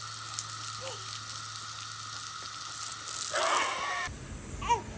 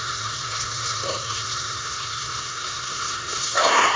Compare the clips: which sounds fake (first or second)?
second